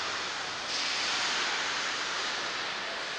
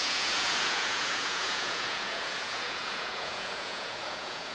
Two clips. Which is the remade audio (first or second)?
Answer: second